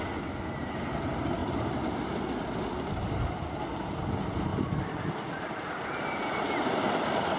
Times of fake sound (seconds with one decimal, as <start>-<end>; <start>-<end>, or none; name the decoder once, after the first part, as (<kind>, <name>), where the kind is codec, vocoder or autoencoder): 1.4-2.1 (vocoder, BigVGAN v2); 4.5-6.4